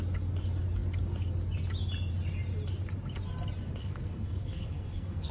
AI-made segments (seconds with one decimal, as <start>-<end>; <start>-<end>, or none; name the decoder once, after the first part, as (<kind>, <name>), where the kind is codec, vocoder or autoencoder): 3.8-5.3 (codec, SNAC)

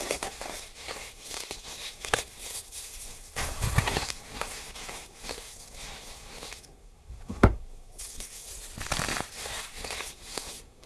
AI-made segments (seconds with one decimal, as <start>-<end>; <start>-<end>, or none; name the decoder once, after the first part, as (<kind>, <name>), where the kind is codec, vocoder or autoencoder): 0.0-8.5 (codec, SNAC); 9.3-10.9

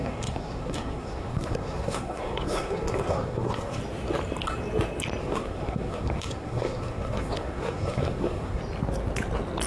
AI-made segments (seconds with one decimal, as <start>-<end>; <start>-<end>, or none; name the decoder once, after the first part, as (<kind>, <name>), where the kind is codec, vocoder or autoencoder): 0.0-3.8 (codec, SNAC); 5.2-8.6

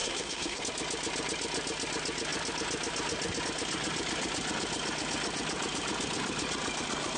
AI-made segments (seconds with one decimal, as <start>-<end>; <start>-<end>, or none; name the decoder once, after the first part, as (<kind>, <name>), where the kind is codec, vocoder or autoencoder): 0.0-0.6 (codec, SNAC)

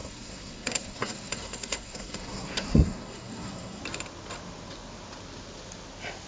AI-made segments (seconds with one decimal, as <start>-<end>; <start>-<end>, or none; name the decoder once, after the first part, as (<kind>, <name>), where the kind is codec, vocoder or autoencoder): 0.0-3.8 (codec, SNAC)